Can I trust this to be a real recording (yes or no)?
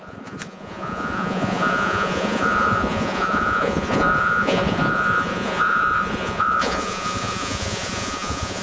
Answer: no